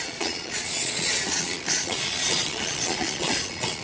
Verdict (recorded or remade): remade